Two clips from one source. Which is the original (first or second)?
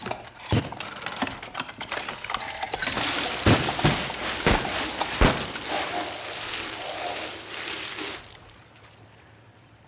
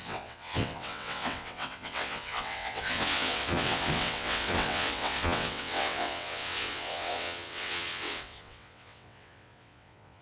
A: first